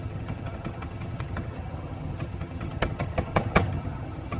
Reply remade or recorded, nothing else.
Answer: remade